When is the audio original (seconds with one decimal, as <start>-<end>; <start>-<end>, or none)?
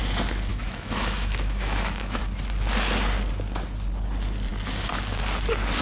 0.0-0.5; 2.2-5.8